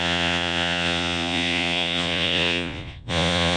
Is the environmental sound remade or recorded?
remade